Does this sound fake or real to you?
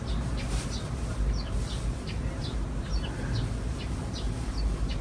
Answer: real